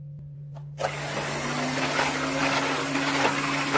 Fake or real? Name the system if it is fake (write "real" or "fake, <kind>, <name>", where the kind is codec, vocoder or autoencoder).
real